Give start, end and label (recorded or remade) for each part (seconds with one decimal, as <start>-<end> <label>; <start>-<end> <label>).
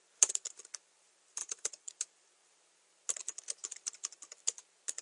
0.0-1.4 recorded; 1.4-1.9 remade; 1.9-5.0 recorded